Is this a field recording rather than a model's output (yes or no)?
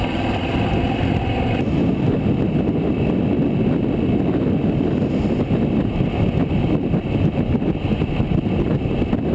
yes